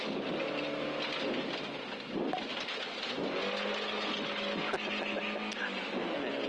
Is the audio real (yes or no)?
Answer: yes